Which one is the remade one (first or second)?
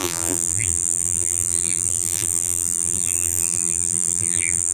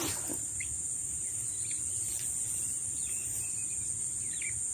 first